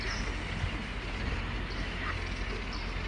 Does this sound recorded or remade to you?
recorded